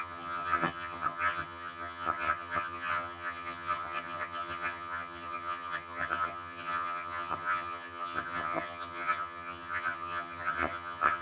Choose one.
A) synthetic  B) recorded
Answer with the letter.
A